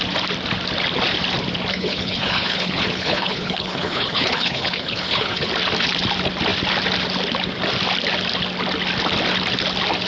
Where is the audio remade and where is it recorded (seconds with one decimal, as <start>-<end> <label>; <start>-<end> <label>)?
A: 0.0-1.7 recorded; 1.7-5.5 remade; 5.5-10.1 recorded